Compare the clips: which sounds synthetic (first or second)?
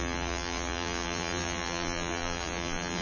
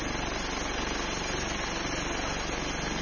first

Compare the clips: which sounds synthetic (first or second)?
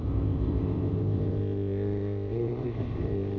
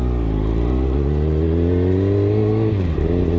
first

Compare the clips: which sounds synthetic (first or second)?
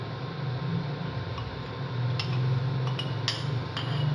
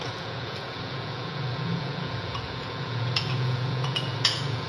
second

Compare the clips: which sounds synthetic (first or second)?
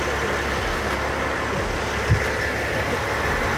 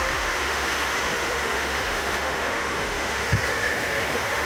second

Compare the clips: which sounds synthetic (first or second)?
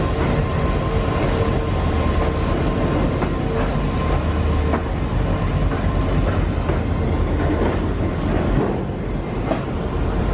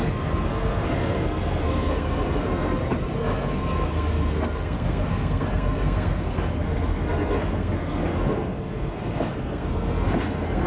second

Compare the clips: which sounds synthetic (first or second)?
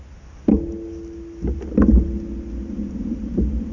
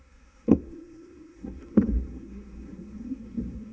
second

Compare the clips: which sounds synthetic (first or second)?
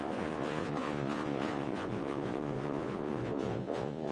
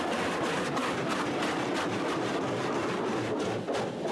first